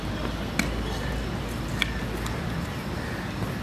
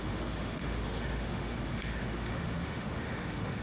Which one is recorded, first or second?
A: first